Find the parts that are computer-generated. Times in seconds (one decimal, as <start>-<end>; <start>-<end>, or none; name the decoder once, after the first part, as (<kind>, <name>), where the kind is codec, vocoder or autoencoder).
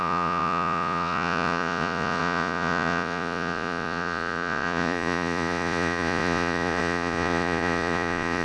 0.0-8.4 (vocoder, Vocos)